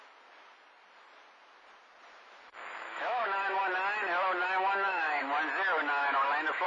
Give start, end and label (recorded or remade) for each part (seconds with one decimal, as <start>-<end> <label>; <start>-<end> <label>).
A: 0.0-2.9 recorded; 2.9-3.7 remade; 3.7-4.4 recorded; 4.4-5.2 remade; 5.2-6.0 recorded; 6.0-6.7 remade

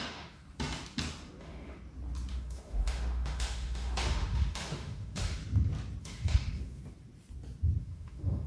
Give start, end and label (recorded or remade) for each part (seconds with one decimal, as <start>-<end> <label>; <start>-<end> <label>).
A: 0.0-0.4 remade; 0.4-1.4 recorded; 1.4-1.8 remade; 1.8-2.3 recorded; 2.3-5.4 remade; 5.4-6.0 recorded; 6.0-6.8 remade; 6.8-7.8 recorded; 7.8-8.5 remade

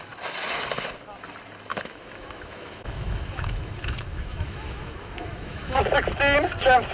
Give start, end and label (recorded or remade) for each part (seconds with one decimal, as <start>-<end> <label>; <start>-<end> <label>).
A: 0.0-1.7 recorded; 1.7-5.8 remade; 5.8-6.9 recorded